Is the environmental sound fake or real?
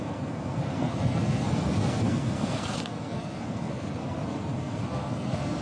fake